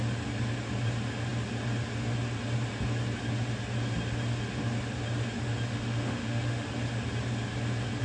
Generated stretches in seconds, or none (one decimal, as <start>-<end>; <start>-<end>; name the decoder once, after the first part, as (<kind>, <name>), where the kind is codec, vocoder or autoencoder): 5.7-6.7 (autoencoder, DAC-VAE)